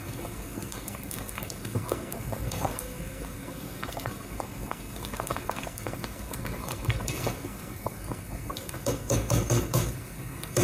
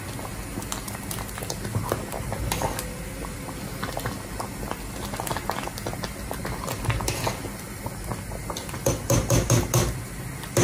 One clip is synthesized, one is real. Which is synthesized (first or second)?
first